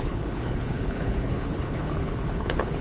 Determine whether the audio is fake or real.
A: fake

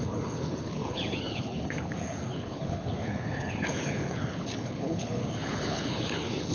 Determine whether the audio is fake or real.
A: fake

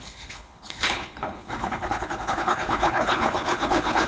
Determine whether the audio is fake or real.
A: fake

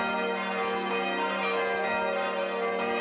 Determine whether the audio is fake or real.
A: real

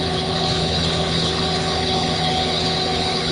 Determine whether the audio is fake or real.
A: fake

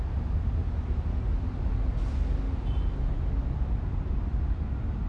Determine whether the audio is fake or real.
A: real